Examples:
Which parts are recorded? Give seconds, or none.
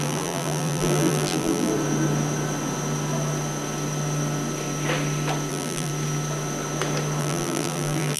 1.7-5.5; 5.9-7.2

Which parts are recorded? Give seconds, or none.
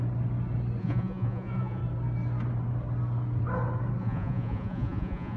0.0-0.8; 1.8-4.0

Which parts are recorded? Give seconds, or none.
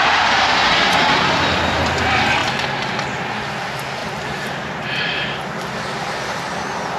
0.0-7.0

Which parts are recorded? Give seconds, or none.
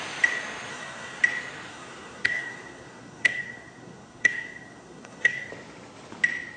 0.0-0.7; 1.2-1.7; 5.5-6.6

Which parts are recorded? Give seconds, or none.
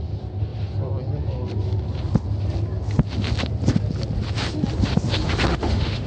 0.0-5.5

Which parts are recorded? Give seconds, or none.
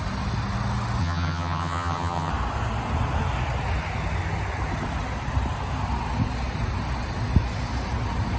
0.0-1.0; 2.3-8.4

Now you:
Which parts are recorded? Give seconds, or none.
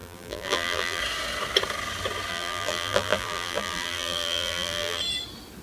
1.0-2.3; 5.0-5.6